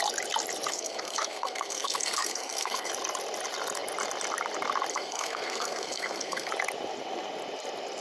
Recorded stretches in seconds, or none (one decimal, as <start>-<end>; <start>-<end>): 0.0-0.7; 2.9-4.9; 6.5-8.0